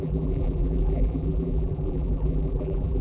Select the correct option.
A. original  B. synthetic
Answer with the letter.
B